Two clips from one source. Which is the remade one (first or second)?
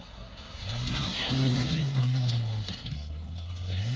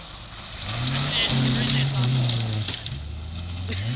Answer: first